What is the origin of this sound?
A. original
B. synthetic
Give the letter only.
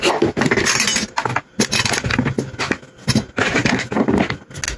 A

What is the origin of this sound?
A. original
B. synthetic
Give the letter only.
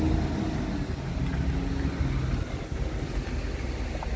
A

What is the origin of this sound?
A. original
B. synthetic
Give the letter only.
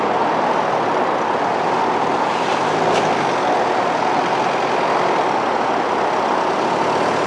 A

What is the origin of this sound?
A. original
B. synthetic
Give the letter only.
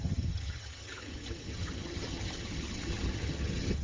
B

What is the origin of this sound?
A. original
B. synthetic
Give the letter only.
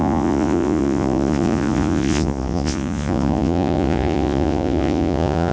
B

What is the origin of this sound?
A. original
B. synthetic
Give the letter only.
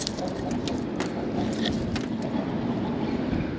A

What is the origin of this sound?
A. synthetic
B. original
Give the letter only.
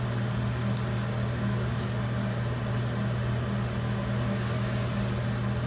B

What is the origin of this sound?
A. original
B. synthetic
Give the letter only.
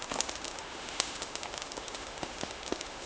B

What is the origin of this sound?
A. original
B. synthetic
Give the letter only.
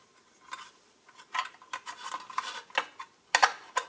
A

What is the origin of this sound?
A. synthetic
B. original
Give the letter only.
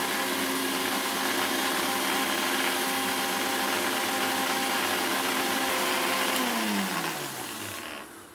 B